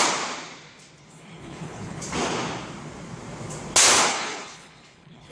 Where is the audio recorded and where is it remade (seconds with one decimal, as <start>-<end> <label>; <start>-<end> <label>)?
0.0-1.0 recorded; 1.0-2.0 remade; 2.0-4.1 recorded; 4.1-5.3 remade